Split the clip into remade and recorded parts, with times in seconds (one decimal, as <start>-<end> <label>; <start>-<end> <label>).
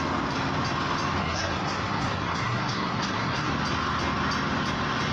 0.0-1.2 recorded; 1.2-3.5 remade; 3.5-5.1 recorded